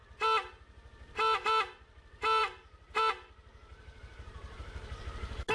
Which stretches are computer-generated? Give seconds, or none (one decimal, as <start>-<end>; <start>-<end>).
2.4-3.1; 3.7-5.0